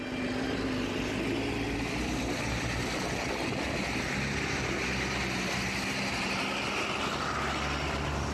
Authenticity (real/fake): real